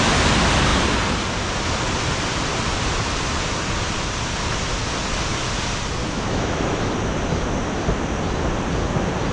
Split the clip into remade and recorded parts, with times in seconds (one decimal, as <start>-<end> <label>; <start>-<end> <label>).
0.0-6.0 recorded; 6.0-6.9 remade; 6.9-9.3 recorded